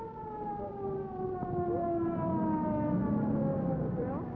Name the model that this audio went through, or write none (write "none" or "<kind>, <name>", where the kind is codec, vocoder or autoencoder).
none